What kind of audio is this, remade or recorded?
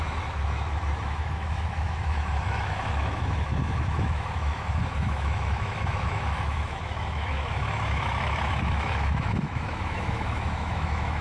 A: remade